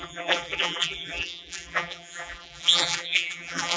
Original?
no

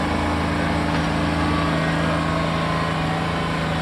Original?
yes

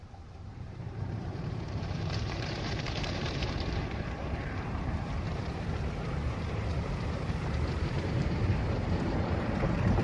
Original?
no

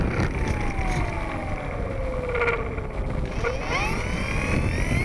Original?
yes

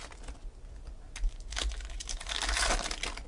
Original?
yes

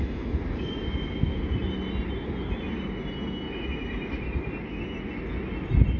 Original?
yes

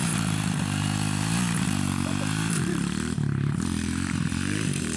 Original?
no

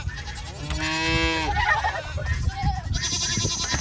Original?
yes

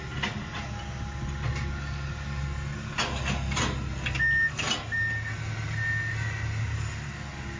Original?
yes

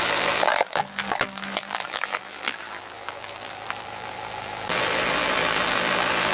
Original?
no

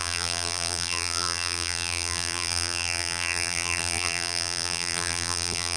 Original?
no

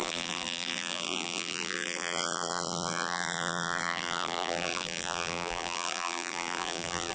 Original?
no